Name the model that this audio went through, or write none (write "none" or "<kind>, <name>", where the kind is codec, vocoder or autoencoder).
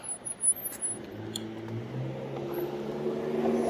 none